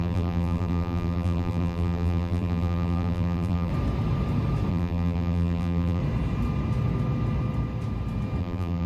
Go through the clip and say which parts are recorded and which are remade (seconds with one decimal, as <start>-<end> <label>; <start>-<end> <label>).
0.0-3.7 remade; 3.7-4.7 recorded; 4.7-6.0 remade; 6.0-8.4 recorded; 8.4-8.9 remade

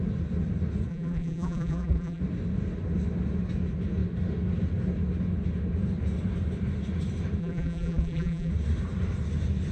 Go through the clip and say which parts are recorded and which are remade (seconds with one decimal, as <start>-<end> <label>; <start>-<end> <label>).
0.0-0.9 recorded; 0.9-2.2 remade; 2.2-7.4 recorded; 7.4-8.5 remade; 8.5-9.7 recorded

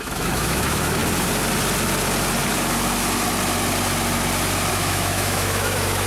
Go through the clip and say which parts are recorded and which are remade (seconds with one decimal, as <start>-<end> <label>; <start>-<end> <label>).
0.0-1.0 remade; 1.0-4.7 recorded; 4.7-6.1 remade

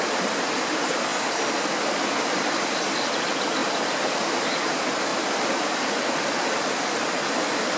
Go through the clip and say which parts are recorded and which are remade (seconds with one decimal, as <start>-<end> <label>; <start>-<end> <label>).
0.0-1.1 recorded; 1.1-2.7 remade; 2.7-3.6 recorded; 3.6-4.5 remade; 4.5-5.1 recorded; 5.1-6.0 remade; 6.0-7.8 recorded

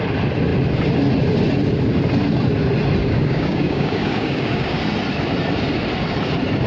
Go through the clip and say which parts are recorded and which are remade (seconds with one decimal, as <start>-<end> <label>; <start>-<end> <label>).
0.0-3.0 recorded; 3.0-4.8 remade; 4.8-6.7 recorded

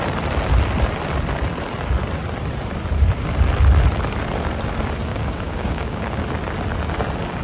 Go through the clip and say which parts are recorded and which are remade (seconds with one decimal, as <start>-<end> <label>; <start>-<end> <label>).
0.0-5.1 recorded; 5.1-6.2 remade; 6.2-7.4 recorded

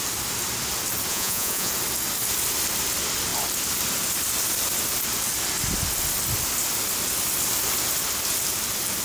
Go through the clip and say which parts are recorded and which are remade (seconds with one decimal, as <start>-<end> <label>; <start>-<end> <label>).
0.0-1.1 recorded; 1.1-1.7 remade; 1.7-9.0 recorded